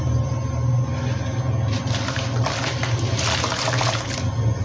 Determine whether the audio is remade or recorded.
recorded